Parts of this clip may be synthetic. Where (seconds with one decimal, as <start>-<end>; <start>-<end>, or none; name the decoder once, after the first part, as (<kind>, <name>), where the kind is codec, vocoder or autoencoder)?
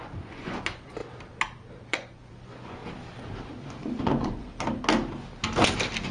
0.0-1.0 (vocoder, Vocos); 1.9-2.8; 4.0-4.5